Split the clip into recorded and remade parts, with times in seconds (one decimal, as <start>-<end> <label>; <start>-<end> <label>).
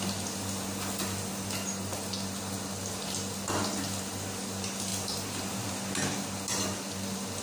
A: 0.0-7.4 recorded